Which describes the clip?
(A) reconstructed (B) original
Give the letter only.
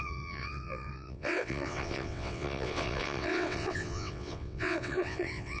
A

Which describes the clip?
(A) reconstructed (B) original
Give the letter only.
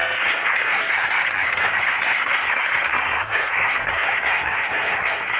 A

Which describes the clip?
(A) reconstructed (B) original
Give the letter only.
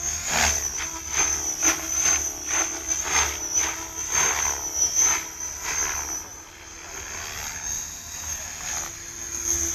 B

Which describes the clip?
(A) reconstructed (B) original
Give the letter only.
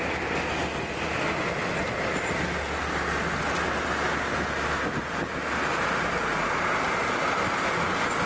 B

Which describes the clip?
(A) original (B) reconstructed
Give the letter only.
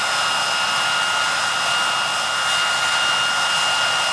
A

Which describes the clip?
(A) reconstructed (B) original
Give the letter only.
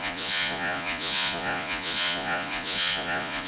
A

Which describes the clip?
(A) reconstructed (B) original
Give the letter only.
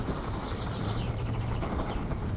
B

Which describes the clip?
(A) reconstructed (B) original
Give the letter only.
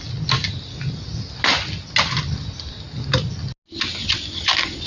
B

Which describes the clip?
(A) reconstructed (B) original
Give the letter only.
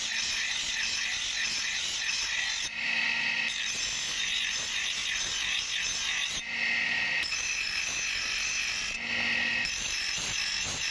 B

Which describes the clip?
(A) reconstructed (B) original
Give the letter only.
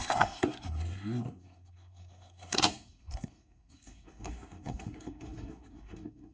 A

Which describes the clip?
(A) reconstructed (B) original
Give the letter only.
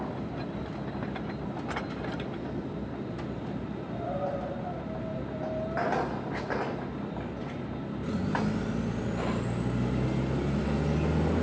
B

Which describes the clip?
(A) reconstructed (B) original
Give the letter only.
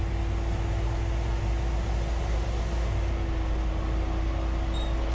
B